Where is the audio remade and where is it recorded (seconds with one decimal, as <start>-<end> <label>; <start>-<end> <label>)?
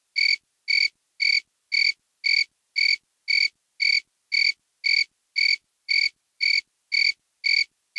0.0-5.6 recorded; 5.6-6.6 remade; 6.6-8.0 recorded